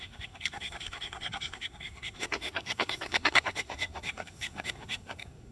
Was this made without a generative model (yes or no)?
no